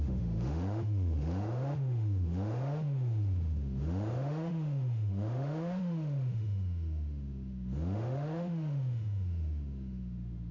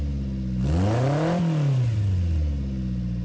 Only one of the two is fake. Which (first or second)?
first